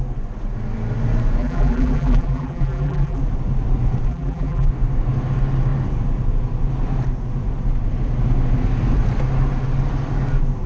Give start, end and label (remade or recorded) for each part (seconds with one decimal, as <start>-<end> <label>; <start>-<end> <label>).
0.0-1.4 recorded; 1.4-3.2 remade; 3.2-4.1 recorded; 4.1-4.7 remade; 4.7-10.7 recorded